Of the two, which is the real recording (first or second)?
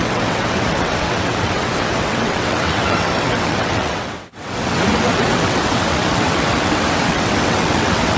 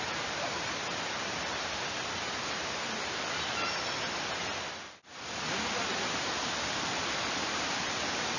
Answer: second